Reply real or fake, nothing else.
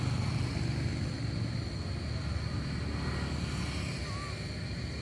real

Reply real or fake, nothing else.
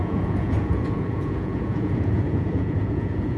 fake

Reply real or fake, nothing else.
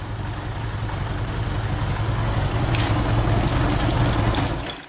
real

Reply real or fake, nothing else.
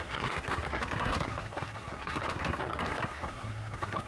fake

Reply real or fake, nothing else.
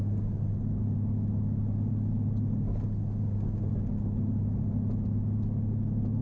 real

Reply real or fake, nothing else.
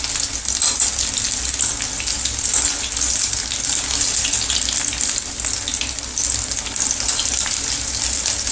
real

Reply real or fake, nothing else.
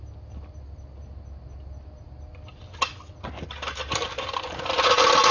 real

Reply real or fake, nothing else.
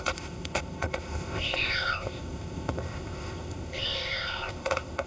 fake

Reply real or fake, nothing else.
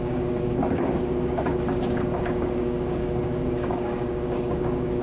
fake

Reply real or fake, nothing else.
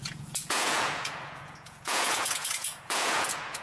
fake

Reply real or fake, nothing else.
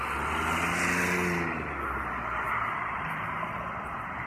real